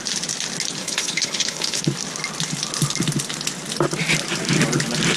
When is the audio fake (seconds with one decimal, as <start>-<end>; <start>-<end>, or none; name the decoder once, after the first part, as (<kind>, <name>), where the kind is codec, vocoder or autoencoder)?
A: 0.8-1.8 (codec, HILCodec)